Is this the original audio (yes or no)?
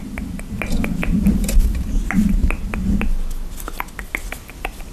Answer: yes